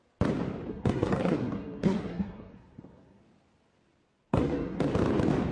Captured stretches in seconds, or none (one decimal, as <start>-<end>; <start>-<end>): 0.0-0.7; 3.2-4.3; 4.9-5.5